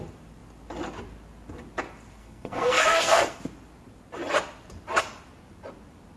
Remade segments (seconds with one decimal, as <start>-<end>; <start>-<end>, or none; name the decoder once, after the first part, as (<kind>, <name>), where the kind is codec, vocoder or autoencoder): 2.2-3.4 (codec, SNAC)